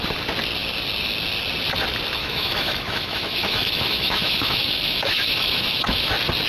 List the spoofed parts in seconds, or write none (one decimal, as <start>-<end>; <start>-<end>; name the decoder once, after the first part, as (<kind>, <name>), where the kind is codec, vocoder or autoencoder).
2.2-6.1 (autoencoder, DAC-VAE)